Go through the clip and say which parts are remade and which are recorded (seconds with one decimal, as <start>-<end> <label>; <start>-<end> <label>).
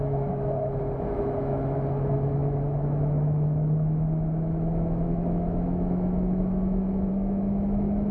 0.0-8.1 remade